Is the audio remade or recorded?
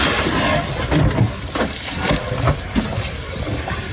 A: recorded